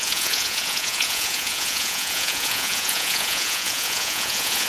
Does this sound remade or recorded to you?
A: remade